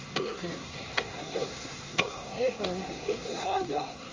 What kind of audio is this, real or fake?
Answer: fake